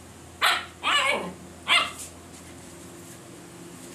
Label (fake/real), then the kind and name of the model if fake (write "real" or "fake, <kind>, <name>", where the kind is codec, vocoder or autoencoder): real